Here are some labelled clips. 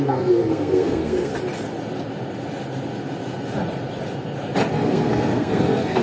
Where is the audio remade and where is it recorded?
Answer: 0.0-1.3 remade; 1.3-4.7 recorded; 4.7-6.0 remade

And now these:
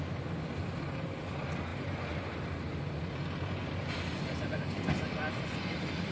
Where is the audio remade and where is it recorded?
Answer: 0.0-6.1 recorded